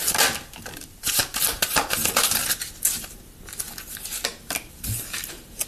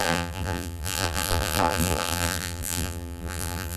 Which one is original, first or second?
first